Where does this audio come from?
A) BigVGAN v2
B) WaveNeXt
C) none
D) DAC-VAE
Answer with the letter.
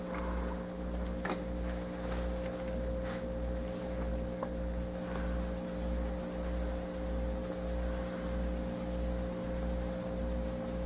C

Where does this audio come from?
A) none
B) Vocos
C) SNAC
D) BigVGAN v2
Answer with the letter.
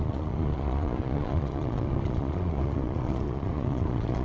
B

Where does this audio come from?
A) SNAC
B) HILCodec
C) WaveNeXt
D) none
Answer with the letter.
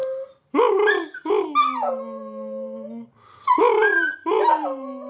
D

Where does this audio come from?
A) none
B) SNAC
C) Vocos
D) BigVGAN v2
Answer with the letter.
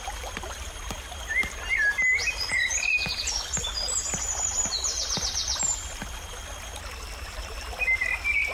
A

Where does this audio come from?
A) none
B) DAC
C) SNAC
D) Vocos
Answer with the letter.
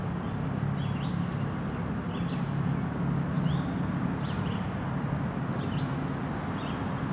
A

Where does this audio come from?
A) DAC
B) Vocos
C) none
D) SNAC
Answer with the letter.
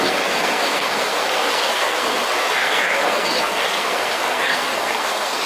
D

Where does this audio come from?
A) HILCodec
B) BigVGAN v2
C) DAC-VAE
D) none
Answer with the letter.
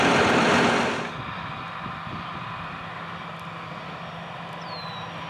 D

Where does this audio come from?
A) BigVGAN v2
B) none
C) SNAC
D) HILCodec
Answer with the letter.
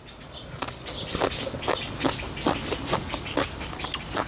B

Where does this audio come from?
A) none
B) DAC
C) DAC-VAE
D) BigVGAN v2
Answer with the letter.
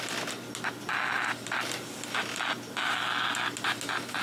A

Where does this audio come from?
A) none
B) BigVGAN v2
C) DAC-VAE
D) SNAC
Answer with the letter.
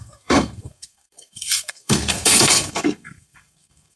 D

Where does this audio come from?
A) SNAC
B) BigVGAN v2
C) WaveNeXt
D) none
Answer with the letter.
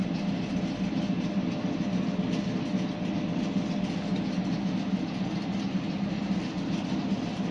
D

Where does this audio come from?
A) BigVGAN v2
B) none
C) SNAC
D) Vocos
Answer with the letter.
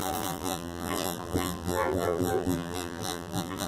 A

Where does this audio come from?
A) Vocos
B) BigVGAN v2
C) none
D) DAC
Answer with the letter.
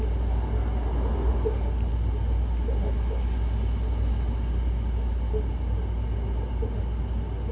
C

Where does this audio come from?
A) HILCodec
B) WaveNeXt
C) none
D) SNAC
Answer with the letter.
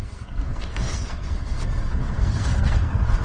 D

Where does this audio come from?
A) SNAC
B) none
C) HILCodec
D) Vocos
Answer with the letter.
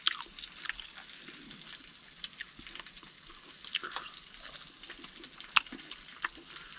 B